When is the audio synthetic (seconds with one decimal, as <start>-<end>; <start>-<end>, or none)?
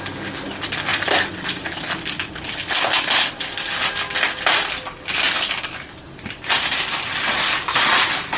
none